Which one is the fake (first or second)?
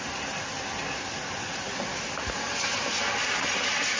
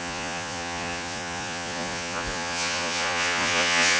second